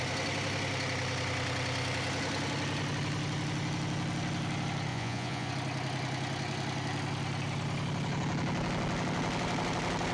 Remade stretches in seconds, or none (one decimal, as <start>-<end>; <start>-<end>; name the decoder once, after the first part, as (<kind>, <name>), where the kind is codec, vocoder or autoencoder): 4.9-5.5 (vocoder, Vocos)